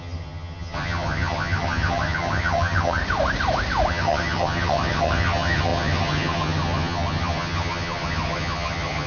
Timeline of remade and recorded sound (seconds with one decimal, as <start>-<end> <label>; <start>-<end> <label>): 0.0-3.0 remade; 3.0-3.9 recorded; 3.9-9.1 remade